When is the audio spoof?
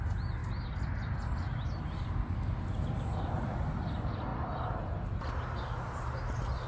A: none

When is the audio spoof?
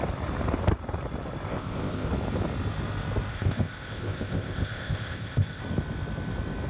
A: 1.5-2.1 (codec, ZipCodec); 3.3-5.6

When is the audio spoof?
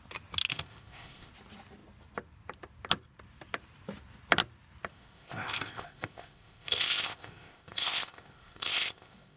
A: 0.5-1.3 (codec, ZipCodec); 4.9-9.4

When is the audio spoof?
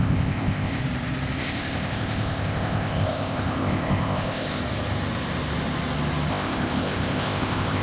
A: 0.0-0.8 (codec, ZipCodec); 1.4-4.6; 6.3-7.8